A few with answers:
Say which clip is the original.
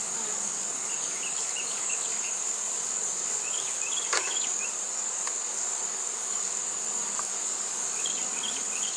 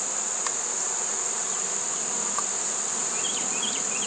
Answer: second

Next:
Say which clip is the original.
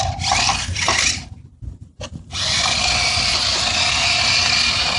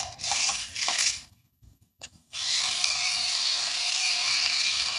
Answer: first